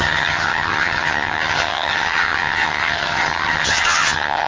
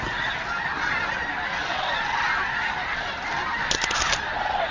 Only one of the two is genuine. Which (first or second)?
second